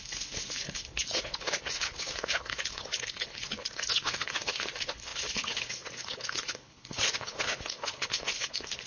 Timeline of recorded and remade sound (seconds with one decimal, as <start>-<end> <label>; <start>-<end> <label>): 0.0-8.9 remade